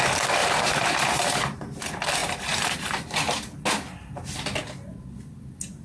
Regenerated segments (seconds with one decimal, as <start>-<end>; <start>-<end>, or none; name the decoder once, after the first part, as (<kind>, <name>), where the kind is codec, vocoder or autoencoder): 0.4-1.8 (vocoder, BigVGAN v2); 2.2-3.0

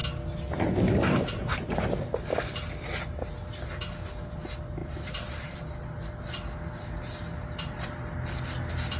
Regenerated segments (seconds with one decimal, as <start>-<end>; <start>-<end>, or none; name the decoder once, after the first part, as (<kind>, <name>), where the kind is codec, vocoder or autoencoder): 4.8-5.6 (vocoder, BigVGAN v2)

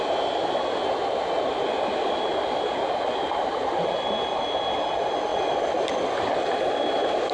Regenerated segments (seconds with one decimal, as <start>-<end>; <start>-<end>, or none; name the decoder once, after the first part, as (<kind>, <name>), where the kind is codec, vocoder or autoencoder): 2.8-4.4 (vocoder, BigVGAN v2)

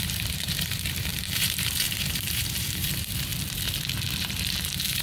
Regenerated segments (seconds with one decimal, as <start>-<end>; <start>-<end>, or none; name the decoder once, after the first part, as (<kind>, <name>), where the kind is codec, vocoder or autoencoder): 0.0-3.3 (vocoder, BigVGAN v2); 4.2-5.0

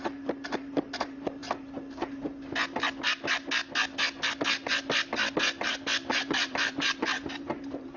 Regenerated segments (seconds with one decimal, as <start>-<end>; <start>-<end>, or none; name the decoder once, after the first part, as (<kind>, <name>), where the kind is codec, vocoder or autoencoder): 0.0-1.4 (vocoder, BigVGAN v2); 6.2-8.0

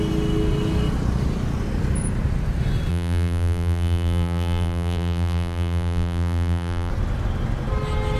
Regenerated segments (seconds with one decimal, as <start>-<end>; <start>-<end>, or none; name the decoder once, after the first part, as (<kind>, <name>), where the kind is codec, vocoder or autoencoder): 2.9-6.9 (vocoder, BigVGAN v2)